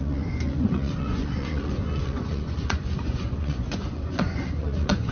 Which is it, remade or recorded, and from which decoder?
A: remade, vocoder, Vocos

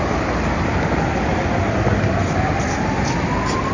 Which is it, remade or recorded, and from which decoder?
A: recorded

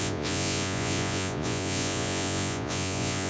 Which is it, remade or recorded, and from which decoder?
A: remade, vocoder, Vocos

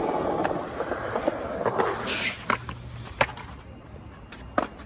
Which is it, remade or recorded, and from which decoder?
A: recorded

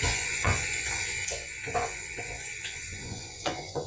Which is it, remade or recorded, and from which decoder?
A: remade, vocoder, Vocos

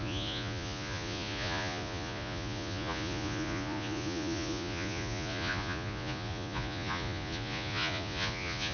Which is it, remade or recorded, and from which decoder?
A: remade, vocoder, Vocos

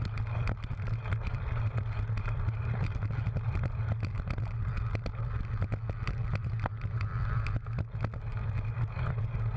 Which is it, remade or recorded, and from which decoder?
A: recorded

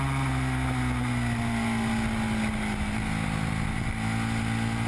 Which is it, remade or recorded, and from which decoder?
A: recorded